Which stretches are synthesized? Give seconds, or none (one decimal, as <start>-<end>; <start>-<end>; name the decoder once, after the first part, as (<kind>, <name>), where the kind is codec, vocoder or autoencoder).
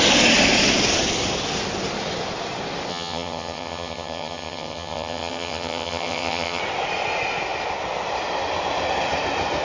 2.9-6.6 (vocoder, HiFi-GAN)